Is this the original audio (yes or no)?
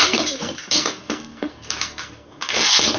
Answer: no